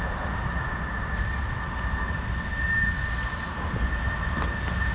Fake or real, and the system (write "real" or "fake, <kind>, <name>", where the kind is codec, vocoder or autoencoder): real